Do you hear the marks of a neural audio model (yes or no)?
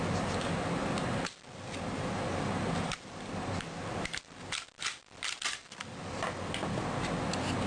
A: no